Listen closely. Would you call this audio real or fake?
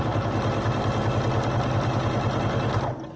real